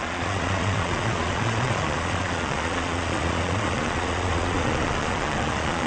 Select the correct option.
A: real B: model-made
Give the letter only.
B